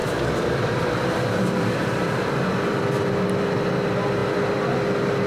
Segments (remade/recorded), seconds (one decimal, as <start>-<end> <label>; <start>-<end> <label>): 0.0-3.1 remade; 3.1-5.3 recorded